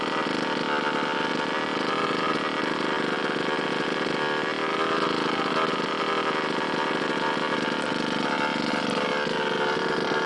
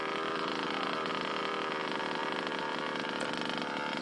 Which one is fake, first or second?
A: second